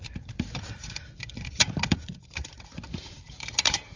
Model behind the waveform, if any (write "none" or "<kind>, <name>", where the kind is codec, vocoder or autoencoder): vocoder, BigVGAN v2